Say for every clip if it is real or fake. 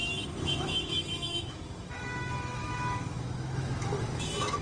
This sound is fake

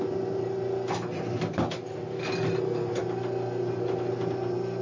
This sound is real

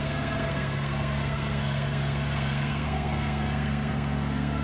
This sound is fake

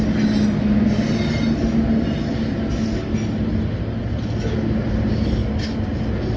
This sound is real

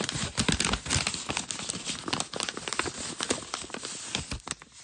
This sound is real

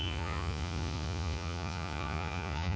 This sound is fake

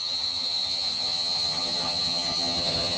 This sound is fake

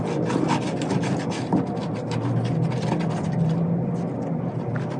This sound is real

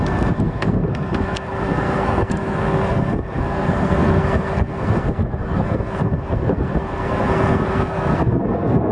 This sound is fake